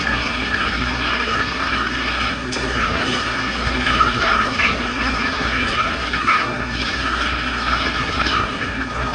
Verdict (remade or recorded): remade